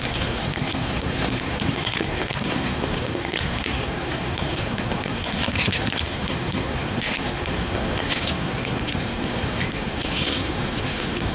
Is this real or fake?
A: fake